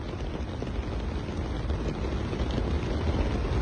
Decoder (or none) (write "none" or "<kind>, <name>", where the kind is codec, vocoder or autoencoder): none